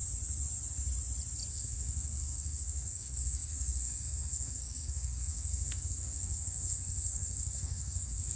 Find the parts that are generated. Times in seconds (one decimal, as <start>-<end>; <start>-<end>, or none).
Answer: 1.5-8.4